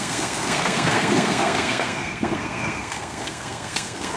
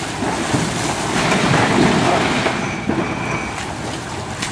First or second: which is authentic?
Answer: second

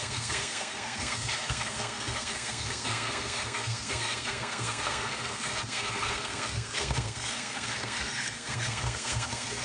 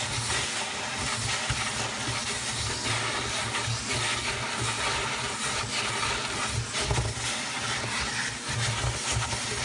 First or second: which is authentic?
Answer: second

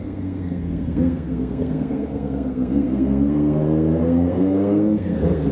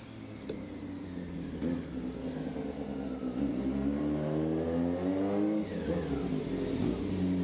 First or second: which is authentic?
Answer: second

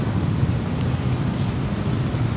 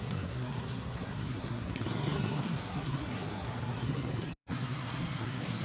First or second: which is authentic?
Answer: first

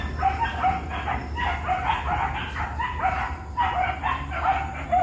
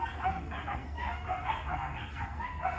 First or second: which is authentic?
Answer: first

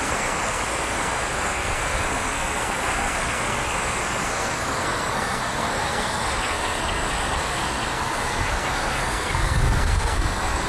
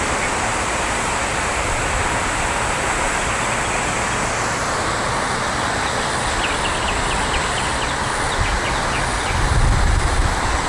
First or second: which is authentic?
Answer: second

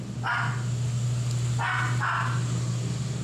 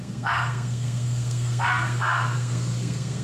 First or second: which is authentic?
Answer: first